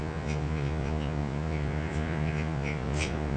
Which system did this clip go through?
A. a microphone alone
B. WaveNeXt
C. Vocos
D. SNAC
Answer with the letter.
C